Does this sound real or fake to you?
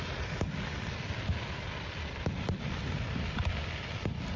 fake